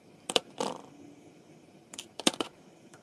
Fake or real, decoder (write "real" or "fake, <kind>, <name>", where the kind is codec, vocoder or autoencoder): fake, vocoder, BigVGAN v2